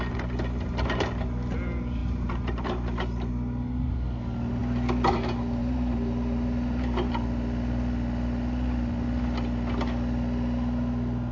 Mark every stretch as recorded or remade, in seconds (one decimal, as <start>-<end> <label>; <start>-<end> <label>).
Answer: 0.0-2.0 recorded; 2.0-3.3 remade; 3.3-5.6 recorded; 5.6-7.1 remade; 7.1-11.3 recorded